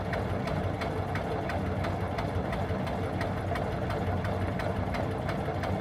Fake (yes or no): no